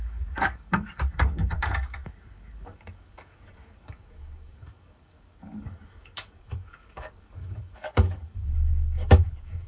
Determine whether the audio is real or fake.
fake